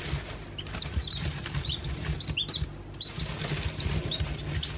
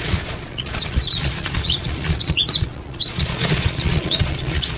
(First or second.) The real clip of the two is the first